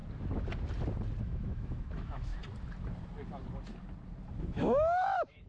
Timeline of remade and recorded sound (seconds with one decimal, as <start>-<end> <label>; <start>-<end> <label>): 0.0-1.2 recorded; 1.2-2.3 remade; 2.3-4.4 recorded; 4.4-5.5 remade